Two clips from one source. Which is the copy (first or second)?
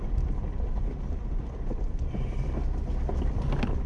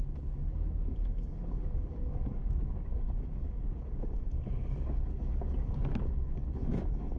second